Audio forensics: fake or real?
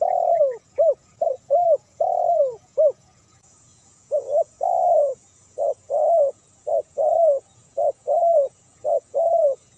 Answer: fake